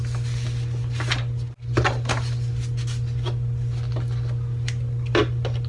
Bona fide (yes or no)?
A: yes